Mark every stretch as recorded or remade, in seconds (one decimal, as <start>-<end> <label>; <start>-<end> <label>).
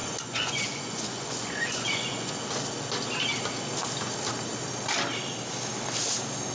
0.0-2.3 remade; 2.3-6.5 recorded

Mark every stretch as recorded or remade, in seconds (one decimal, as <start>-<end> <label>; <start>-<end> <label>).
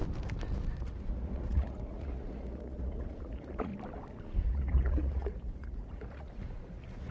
0.0-0.8 recorded; 0.8-3.7 remade; 3.7-4.3 recorded; 4.3-7.1 remade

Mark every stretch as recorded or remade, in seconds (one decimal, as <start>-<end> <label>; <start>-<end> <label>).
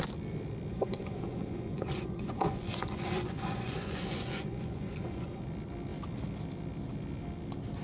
0.0-0.7 recorded; 0.7-5.4 remade; 5.4-7.8 recorded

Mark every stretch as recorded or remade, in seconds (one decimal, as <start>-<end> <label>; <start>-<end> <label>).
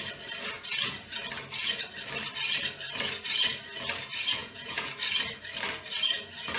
0.0-4.4 recorded; 4.4-4.9 remade; 4.9-6.6 recorded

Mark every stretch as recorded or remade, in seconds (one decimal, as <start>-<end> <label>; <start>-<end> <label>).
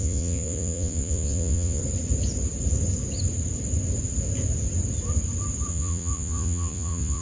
0.0-1.8 remade; 1.8-5.7 recorded; 5.7-7.2 remade